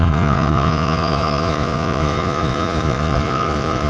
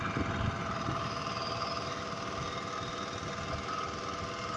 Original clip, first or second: second